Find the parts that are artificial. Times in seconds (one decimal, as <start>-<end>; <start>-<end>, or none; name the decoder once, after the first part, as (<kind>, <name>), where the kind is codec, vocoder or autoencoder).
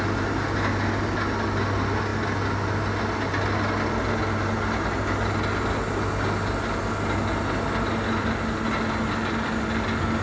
none